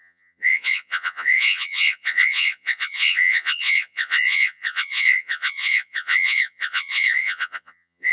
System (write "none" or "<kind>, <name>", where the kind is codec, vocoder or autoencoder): vocoder, Vocos